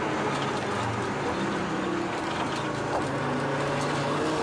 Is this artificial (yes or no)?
no